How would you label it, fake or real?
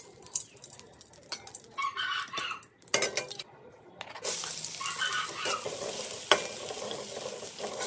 real